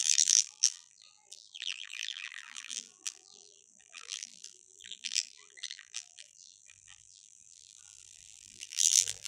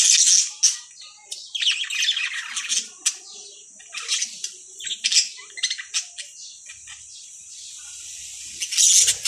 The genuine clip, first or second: second